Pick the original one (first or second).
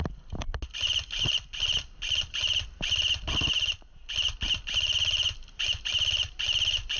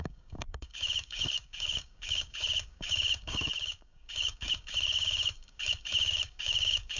first